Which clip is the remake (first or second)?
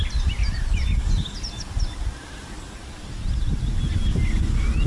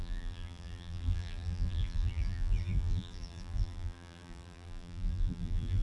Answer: second